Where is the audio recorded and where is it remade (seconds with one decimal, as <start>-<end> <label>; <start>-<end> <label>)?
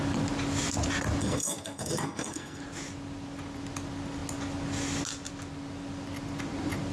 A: 0.0-1.2 recorded; 1.2-2.6 remade; 2.6-6.9 recorded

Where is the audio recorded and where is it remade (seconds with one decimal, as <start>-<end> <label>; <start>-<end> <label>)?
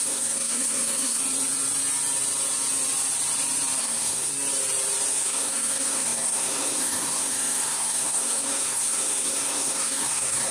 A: 0.0-1.2 remade; 1.2-3.8 recorded; 3.8-4.3 remade; 4.3-5.1 recorded; 5.1-10.5 remade